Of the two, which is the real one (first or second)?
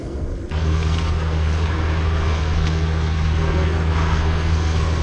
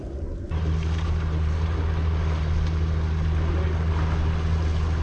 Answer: second